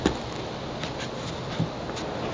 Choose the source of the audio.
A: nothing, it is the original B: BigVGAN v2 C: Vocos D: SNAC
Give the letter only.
A